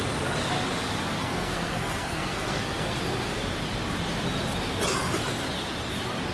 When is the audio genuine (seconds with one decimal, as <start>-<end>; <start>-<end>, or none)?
0.0-1.2; 3.0-6.3